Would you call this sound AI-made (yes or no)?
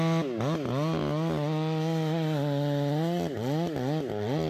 no